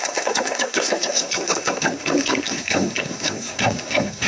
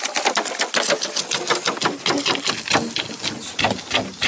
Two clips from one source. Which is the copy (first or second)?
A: first